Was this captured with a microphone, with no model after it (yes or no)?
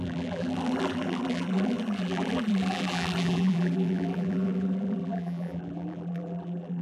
no